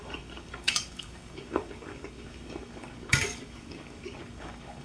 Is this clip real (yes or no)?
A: no